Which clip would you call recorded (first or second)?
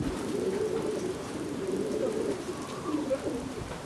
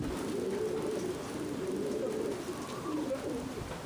second